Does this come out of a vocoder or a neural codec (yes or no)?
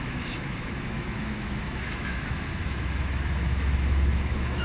yes